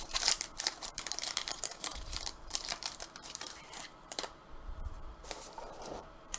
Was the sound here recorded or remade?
remade